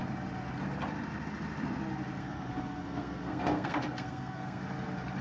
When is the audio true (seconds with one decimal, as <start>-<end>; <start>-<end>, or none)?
0.0-2.2; 4.6-5.2